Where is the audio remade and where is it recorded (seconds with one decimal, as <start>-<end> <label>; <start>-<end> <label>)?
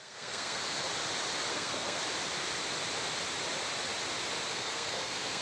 0.0-0.6 remade; 0.6-1.5 recorded; 1.5-2.0 remade; 2.0-4.5 recorded; 4.5-5.4 remade